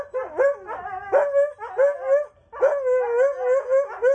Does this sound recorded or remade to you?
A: recorded